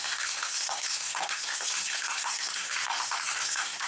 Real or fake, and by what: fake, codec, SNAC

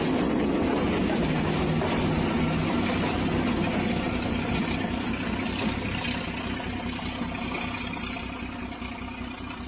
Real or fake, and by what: real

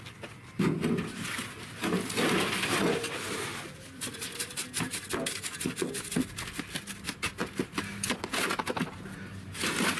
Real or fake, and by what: real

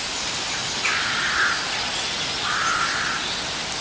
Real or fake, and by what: real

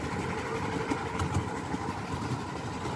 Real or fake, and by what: real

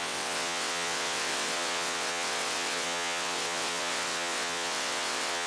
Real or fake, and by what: fake, vocoder, WaveNeXt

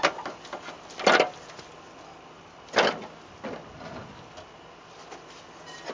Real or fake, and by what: real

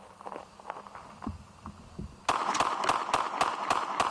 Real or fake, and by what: real